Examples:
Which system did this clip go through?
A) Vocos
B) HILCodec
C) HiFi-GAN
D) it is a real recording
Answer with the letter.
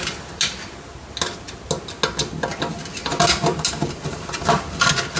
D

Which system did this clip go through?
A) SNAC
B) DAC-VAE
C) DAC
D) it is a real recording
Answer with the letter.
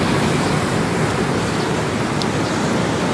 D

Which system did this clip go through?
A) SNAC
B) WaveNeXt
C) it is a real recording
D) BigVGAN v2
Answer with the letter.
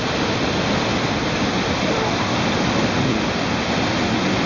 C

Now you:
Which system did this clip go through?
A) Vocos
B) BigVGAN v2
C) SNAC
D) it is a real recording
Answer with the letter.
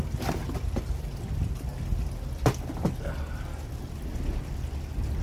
D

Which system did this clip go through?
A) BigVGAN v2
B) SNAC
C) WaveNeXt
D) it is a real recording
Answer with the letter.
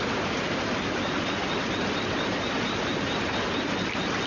D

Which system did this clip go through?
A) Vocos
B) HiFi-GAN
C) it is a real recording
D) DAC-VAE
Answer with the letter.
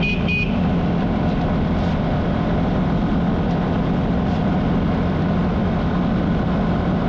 C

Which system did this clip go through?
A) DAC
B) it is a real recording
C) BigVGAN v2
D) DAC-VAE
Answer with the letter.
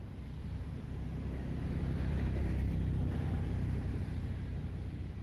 C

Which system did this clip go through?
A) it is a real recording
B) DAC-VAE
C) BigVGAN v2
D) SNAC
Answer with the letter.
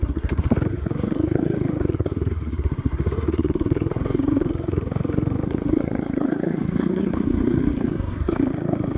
D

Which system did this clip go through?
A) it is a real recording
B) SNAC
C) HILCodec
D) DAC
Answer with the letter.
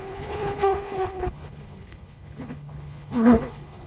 C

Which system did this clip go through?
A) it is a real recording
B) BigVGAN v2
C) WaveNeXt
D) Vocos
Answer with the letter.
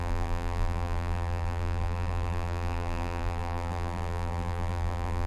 B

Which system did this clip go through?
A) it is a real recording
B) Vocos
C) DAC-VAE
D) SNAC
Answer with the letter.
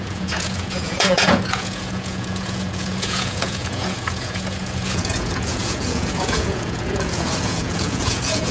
B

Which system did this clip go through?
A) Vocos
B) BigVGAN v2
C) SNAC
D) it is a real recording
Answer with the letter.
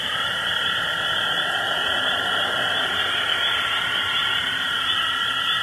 D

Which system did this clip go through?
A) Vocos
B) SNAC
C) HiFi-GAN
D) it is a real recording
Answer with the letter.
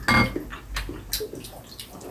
D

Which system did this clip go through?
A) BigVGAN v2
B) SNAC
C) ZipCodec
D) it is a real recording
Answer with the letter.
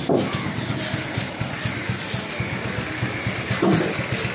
D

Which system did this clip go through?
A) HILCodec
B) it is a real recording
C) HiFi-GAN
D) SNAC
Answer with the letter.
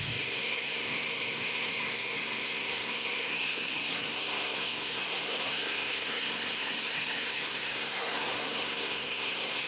D